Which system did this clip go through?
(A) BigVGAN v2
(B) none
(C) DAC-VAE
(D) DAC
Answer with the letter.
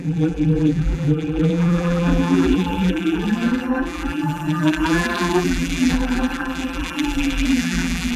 A